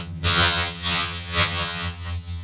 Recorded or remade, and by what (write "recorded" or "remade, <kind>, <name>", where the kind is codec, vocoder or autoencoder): remade, vocoder, HiFi-GAN